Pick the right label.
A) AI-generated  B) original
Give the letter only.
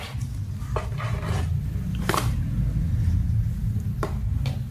B